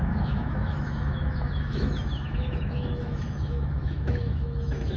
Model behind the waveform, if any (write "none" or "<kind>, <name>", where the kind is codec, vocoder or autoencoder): autoencoder, DAC-VAE